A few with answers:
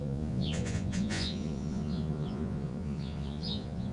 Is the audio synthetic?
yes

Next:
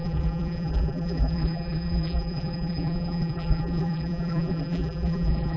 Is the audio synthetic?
yes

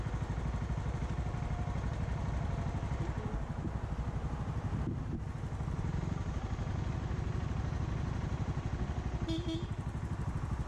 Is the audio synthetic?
no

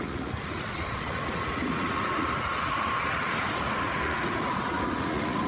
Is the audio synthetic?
yes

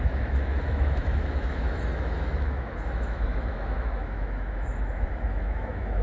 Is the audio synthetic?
yes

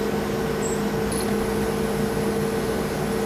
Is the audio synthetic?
no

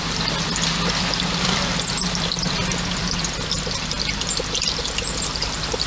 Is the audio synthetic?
no